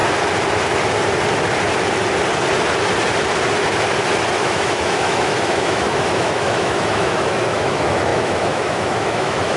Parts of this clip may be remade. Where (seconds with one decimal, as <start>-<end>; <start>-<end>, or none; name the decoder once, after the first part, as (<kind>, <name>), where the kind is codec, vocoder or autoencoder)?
4.4-9.6 (autoencoder, DAC-VAE)